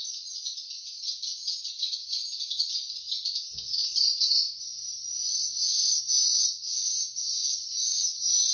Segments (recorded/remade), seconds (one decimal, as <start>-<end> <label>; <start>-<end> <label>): 0.0-8.5 recorded